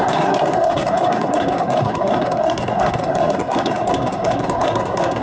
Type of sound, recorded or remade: remade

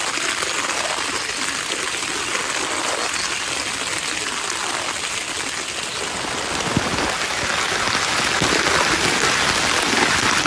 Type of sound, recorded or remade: recorded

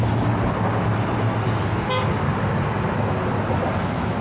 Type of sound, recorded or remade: recorded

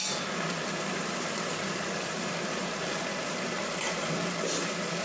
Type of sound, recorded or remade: remade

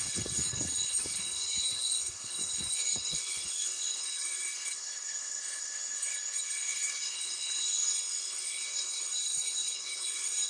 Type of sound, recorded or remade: remade